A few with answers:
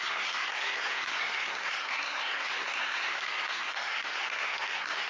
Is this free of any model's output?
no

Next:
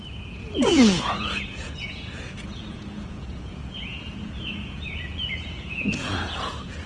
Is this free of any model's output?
no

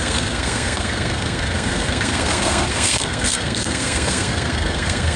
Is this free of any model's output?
no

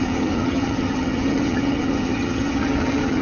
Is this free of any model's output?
no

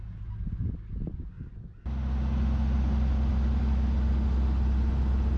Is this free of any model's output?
yes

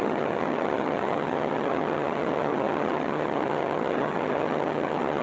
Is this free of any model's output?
no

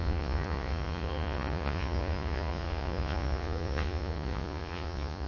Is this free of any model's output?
no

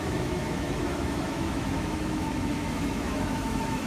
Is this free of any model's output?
no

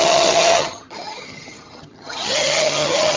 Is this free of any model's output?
no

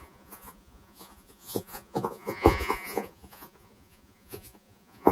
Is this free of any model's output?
no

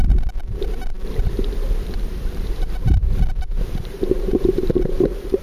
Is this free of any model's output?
no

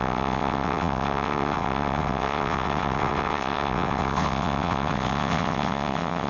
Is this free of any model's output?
no